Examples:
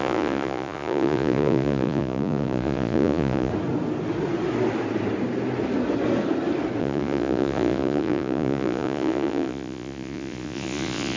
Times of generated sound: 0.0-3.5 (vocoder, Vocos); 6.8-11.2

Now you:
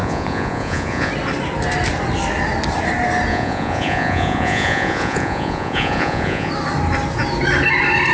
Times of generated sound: 0.0-1.1 (vocoder, Vocos); 3.3-6.5

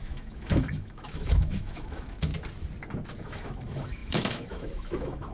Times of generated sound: 0.0-2.3 (autoencoder, DAC-VAE); 3.2-5.3

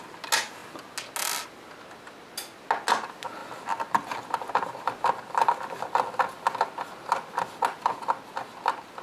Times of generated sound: none

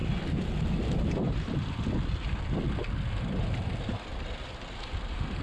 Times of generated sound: none

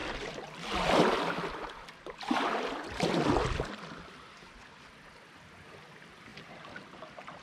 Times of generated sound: none

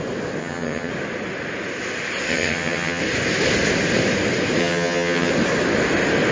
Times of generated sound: 0.4-0.9 (vocoder, HiFi-GAN); 2.3-3.0; 4.6-5.3

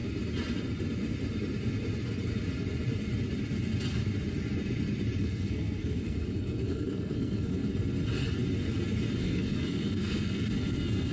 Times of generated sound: 5.2-7.6 (codec, SNAC); 9.2-11.1